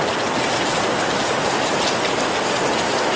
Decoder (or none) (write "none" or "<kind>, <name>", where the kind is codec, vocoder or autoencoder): none